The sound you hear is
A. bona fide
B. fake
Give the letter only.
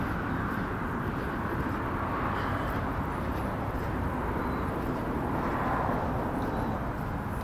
A